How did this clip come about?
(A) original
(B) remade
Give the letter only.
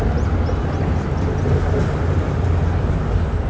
A